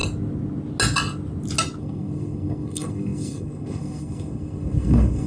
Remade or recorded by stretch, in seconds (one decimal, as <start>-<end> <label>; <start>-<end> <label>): 0.0-1.8 recorded; 1.8-5.3 remade